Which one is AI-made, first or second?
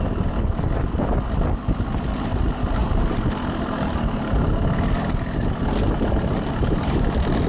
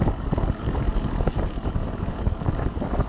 second